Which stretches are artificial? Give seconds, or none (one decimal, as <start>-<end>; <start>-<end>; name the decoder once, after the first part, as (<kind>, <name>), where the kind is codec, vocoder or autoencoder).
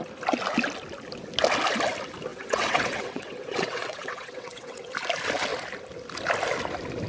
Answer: 2.3-4.9 (vocoder, WaveNeXt)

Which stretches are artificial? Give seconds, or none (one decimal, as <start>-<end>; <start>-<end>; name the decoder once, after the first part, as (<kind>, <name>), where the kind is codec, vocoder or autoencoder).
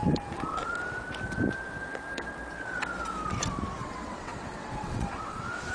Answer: 3.8-5.7 (vocoder, WaveNeXt)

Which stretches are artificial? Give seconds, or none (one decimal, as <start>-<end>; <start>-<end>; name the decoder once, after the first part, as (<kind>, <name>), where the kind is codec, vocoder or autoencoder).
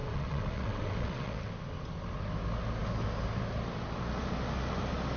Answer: 0.0-1.5 (vocoder, WaveNeXt)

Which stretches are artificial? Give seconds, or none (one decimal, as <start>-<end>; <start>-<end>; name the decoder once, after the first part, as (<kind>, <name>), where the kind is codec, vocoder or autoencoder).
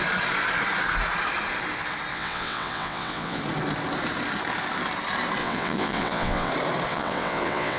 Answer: 2.1-3.4 (vocoder, WaveNeXt); 5.4-6.5; 6.9-7.8